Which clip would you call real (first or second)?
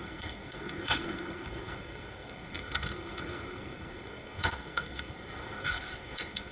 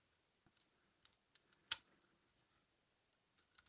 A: second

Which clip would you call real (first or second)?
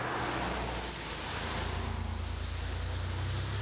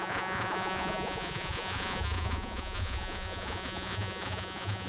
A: first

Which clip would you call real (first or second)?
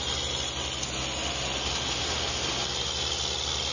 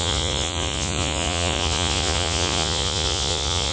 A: first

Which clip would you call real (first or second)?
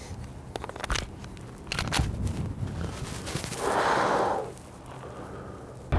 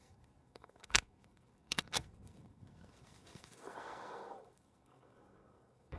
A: first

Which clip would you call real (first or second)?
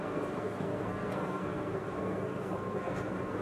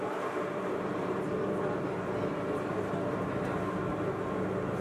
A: second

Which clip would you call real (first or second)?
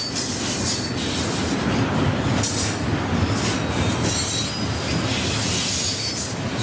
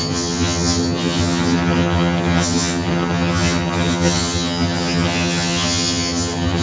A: first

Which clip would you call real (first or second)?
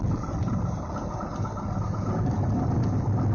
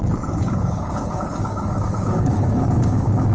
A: first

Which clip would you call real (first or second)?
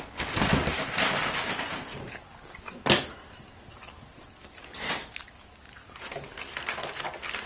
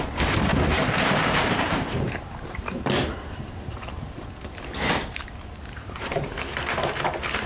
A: first